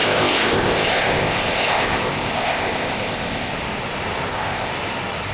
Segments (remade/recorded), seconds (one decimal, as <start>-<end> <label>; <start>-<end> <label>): 0.0-3.5 remade; 3.5-4.3 recorded; 4.3-4.7 remade; 4.7-5.3 recorded